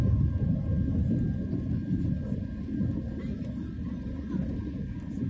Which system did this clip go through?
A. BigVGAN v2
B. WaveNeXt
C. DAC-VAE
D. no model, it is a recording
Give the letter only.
D